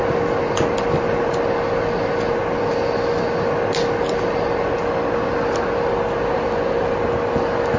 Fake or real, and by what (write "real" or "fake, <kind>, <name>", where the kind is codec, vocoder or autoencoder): real